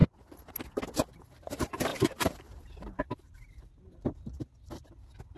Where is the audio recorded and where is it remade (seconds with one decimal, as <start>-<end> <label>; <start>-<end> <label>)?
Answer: 0.0-1.9 recorded; 1.9-3.7 remade; 3.7-5.4 recorded